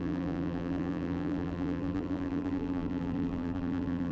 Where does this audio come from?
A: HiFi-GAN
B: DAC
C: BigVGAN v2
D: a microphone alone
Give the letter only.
C